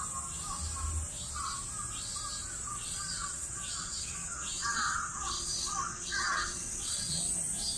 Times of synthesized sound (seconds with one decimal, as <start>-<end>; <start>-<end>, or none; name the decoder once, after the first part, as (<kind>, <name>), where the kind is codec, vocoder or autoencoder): 2.7-7.2 (vocoder, WaveNeXt)